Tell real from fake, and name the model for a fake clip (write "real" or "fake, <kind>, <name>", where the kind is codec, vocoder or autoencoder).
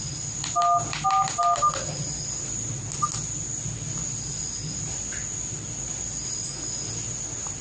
real